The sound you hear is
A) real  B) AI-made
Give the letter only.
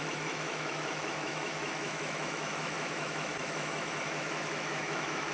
B